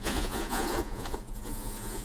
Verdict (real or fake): fake